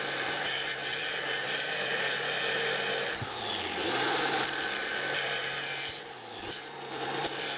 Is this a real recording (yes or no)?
no